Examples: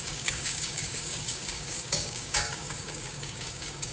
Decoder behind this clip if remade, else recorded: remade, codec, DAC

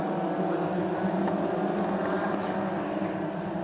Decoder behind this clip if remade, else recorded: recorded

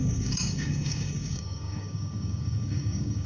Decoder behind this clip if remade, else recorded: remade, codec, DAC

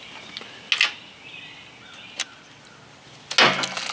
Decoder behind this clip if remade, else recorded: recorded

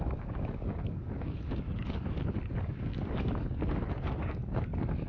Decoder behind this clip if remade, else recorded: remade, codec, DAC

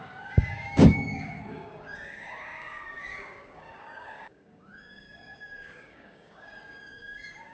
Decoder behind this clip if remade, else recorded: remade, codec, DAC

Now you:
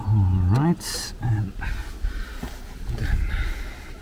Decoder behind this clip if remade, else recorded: recorded